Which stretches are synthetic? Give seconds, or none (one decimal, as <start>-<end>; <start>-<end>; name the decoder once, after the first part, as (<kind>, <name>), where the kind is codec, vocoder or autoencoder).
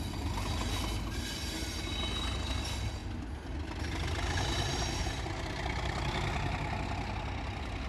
none